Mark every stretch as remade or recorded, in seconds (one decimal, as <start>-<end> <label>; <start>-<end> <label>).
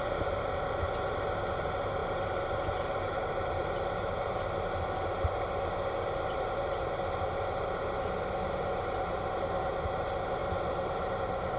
0.0-2.0 recorded; 2.0-6.9 remade; 6.9-10.4 recorded; 10.4-11.2 remade; 11.2-11.6 recorded